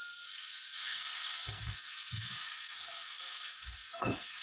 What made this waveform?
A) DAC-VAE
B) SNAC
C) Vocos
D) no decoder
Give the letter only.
B